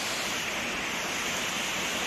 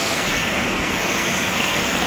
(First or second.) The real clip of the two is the first